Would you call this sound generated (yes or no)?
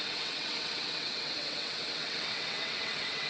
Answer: yes